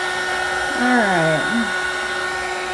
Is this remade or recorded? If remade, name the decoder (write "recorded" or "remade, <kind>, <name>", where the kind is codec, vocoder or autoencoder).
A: recorded